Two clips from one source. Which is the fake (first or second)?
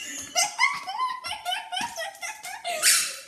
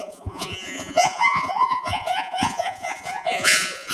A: second